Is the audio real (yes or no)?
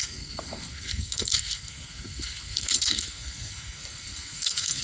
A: no